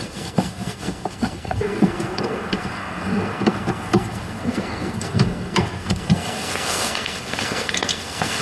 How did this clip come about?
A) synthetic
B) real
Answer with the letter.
A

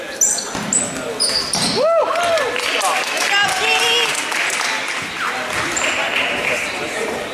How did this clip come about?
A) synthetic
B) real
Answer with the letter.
B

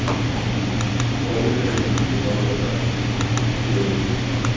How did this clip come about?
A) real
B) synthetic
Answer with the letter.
A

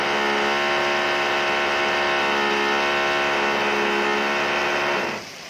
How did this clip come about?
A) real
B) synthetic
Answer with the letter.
A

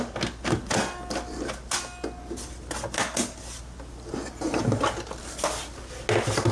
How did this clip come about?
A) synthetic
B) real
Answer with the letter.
B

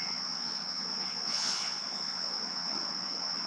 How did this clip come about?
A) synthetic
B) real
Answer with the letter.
A